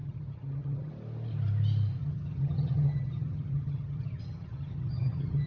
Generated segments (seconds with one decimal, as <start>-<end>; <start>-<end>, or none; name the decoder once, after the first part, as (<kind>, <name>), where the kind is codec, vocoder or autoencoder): 0.0-0.9 (vocoder, HiFi-GAN); 2.0-5.5